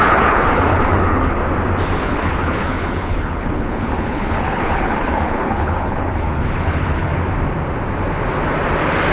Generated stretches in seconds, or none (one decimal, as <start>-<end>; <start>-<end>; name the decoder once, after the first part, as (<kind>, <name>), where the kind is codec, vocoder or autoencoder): 0.0-1.4 (codec, HILCodec); 2.0-7.1